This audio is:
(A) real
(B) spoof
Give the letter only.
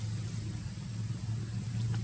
A